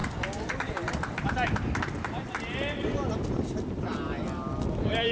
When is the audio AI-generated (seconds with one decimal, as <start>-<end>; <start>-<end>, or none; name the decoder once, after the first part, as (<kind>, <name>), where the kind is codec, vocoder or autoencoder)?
none